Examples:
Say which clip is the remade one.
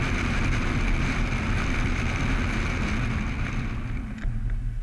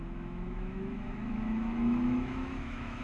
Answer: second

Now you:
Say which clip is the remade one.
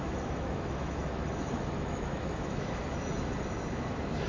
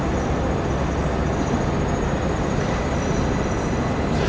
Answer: first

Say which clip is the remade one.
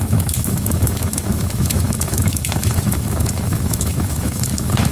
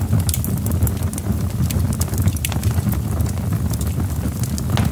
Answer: first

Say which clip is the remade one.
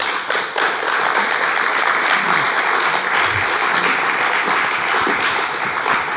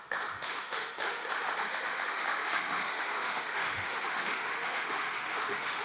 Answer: second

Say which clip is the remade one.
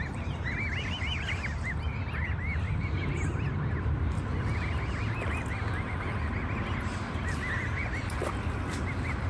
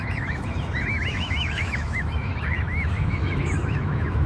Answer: second